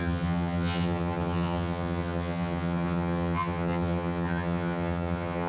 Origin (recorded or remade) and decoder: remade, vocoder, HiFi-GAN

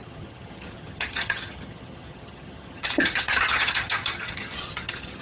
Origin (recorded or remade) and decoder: remade, vocoder, HiFi-GAN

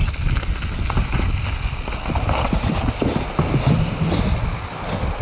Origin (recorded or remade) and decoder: recorded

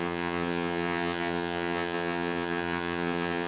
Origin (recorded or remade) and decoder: remade, vocoder, HiFi-GAN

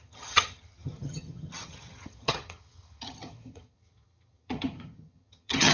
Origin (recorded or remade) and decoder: remade, vocoder, HiFi-GAN